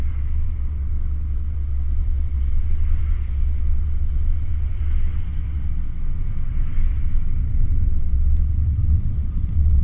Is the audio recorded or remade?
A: remade